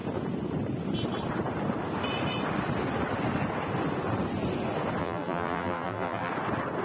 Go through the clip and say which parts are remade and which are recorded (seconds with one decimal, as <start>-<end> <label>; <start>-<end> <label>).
0.0-5.0 recorded; 5.0-6.3 remade; 6.3-6.8 recorded